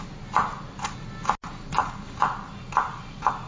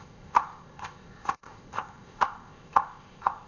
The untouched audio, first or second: first